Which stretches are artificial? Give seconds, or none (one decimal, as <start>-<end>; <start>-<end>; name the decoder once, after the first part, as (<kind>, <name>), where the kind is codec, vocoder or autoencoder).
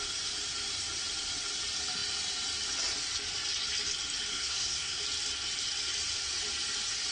4.3-5.0 (codec, SNAC)